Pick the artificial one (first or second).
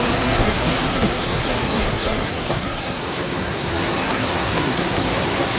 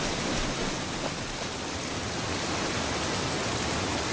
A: first